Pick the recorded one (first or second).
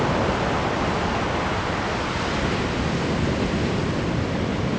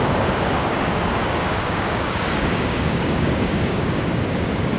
first